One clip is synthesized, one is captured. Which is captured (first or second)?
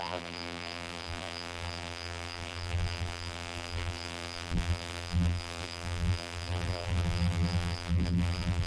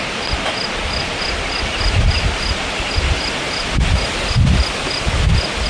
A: second